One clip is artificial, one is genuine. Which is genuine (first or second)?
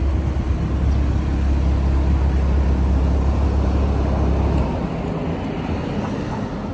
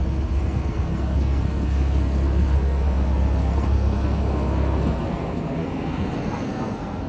first